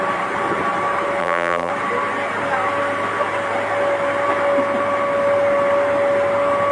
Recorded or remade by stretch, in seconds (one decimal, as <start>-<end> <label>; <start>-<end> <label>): 0.0-1.2 recorded; 1.2-1.7 remade; 1.7-6.7 recorded